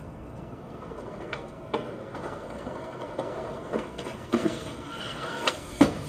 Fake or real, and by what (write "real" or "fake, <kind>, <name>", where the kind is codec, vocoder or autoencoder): fake, codec, SNAC